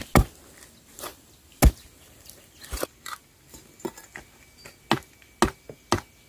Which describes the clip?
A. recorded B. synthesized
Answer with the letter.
A